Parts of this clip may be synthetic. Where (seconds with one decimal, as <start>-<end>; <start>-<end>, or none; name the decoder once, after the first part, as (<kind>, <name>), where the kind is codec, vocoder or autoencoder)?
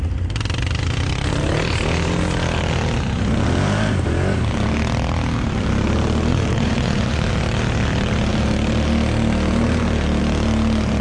6.3-7.3 (vocoder, Vocos)